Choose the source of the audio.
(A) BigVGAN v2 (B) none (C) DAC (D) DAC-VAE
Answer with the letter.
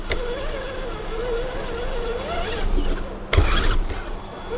B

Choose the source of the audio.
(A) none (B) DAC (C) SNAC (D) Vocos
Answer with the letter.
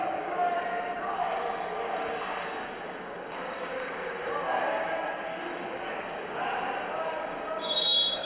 B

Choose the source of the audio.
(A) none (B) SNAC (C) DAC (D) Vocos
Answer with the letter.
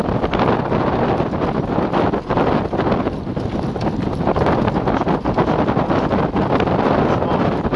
A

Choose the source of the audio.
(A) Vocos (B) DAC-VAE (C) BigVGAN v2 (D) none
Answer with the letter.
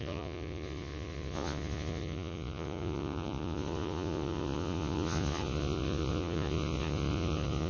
A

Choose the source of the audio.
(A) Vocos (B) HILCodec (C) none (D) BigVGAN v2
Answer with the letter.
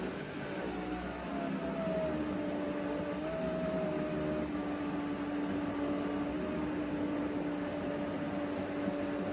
C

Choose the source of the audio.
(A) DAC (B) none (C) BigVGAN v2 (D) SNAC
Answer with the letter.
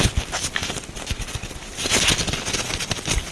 B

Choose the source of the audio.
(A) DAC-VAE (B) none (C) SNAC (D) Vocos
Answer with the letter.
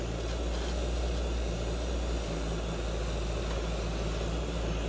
B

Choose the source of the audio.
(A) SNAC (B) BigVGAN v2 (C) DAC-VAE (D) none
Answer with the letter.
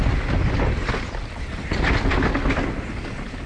D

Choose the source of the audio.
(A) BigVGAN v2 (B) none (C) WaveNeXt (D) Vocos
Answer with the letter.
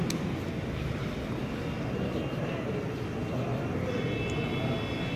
B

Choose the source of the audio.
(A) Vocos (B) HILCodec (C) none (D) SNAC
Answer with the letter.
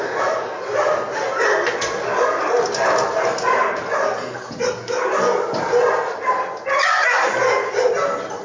C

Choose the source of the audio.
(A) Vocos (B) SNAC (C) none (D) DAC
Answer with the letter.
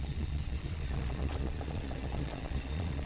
A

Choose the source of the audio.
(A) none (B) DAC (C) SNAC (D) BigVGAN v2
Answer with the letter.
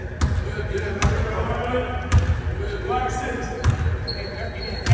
A